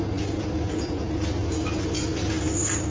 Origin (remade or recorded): recorded